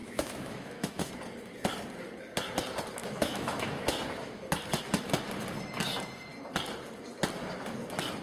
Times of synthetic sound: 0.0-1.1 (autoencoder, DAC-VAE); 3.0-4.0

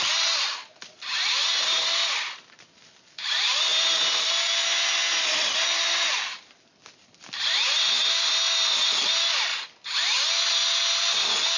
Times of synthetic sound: none

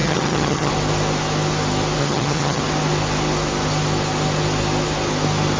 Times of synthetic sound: 0.0-0.7 (vocoder, HiFi-GAN); 2.0-2.6

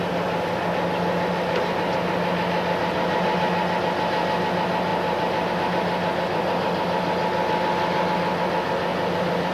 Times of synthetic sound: 4.9-5.5 (vocoder, BigVGAN v2); 8.9-9.5

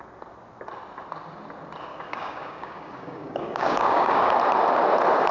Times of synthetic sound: 1.9-4.3 (codec, DAC)

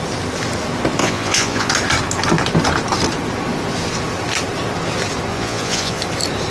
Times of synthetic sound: 1.0-1.7 (vocoder, Vocos); 5.3-6.0